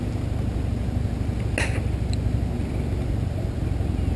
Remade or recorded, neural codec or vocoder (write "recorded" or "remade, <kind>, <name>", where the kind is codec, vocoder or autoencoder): recorded